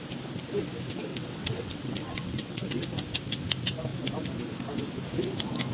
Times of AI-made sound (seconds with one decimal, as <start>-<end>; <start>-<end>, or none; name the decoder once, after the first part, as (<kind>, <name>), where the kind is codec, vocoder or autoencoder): 1.1-2.8 (vocoder, WaveNeXt)